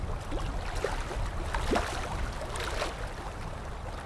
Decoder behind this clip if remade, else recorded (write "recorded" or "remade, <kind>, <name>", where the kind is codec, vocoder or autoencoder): recorded